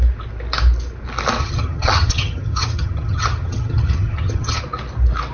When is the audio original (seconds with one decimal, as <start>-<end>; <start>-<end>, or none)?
0.0-1.4; 4.6-5.3

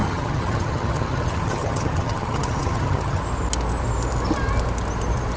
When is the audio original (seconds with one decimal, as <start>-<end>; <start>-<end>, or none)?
3.2-5.4

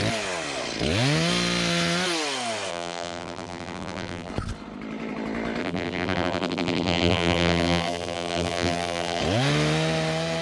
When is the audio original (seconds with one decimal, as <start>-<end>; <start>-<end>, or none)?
0.0-2.7; 4.3-5.6; 9.2-10.4